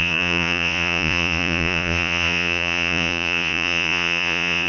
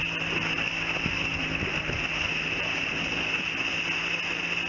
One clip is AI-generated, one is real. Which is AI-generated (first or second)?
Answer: first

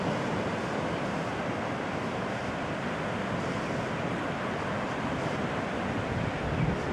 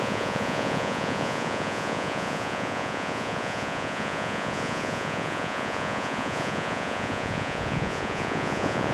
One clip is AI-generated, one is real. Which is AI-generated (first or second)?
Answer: second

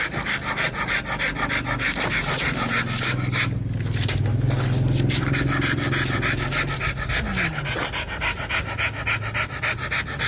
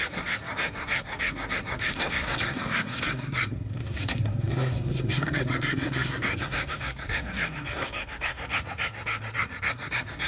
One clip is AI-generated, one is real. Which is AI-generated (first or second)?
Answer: second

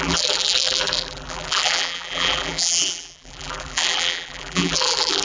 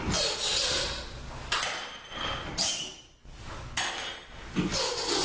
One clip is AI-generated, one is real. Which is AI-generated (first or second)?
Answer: first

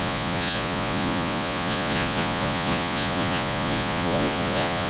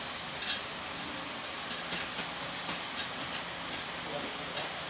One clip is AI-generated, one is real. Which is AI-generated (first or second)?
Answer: first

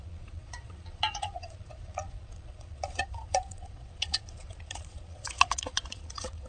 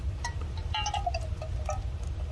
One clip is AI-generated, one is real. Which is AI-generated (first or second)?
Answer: first